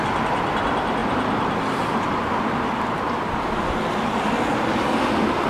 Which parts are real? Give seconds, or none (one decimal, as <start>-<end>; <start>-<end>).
0.0-1.0; 4.3-5.5